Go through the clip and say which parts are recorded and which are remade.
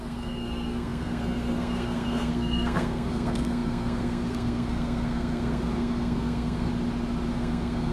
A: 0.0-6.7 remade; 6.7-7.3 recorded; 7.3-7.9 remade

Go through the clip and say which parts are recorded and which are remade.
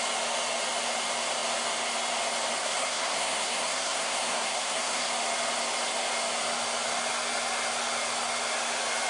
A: 0.0-2.6 recorded; 2.6-5.1 remade; 5.1-9.1 recorded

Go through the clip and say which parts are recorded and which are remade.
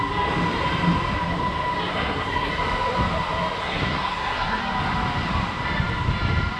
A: 0.0-1.9 recorded; 1.9-2.5 remade; 2.5-3.6 recorded; 3.6-4.6 remade; 4.6-6.6 recorded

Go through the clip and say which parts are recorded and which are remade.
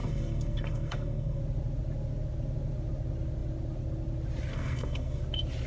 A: 0.0-1.4 remade; 1.4-4.5 recorded; 4.5-5.2 remade; 5.2-5.7 recorded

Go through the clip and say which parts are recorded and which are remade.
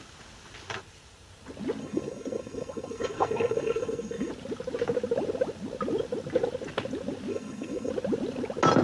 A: 0.0-1.8 recorded; 1.8-4.3 remade; 4.3-7.3 recorded; 7.3-7.9 remade; 7.9-8.8 recorded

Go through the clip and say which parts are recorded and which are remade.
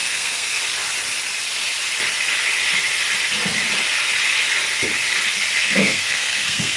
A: 0.0-0.6 remade; 0.6-5.6 recorded; 5.6-6.8 remade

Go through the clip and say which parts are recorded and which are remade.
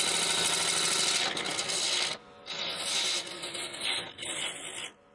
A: 0.0-5.1 recorded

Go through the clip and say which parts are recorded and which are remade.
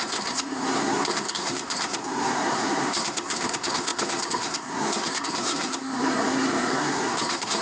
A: 0.0-7.6 remade